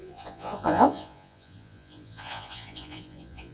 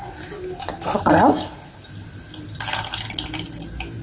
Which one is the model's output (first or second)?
first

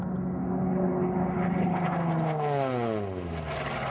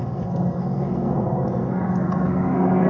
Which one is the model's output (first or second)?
second